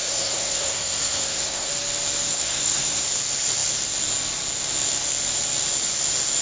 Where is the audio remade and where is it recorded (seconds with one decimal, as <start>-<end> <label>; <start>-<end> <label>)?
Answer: 0.0-1.7 remade; 1.7-2.3 recorded; 2.3-3.1 remade; 3.1-6.4 recorded